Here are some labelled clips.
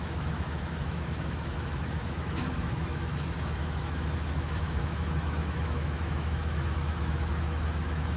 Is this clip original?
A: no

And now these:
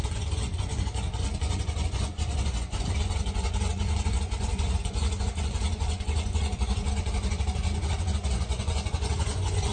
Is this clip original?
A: no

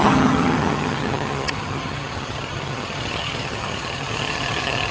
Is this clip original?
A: no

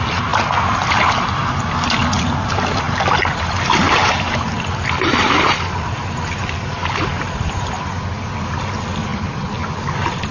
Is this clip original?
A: yes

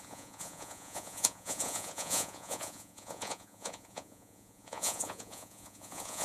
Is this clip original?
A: no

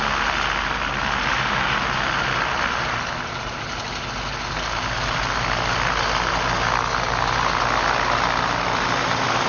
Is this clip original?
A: yes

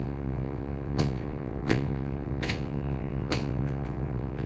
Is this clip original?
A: no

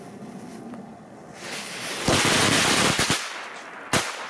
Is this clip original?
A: yes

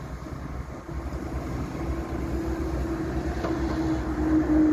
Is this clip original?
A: yes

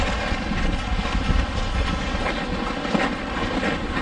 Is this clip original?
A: yes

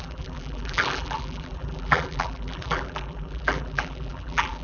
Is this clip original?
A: no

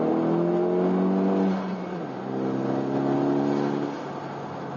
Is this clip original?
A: yes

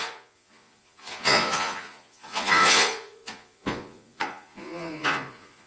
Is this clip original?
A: no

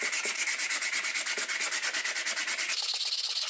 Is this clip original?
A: yes